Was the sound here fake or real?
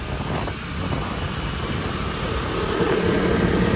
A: real